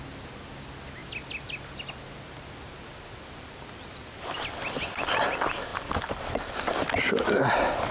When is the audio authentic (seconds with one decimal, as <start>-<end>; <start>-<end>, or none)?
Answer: 0.0-7.9